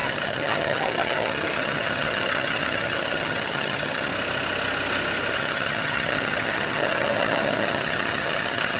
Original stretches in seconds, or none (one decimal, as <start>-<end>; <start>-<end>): 4.1-5.3